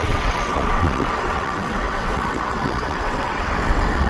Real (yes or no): no